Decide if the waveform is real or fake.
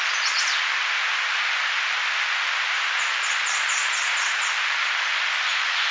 real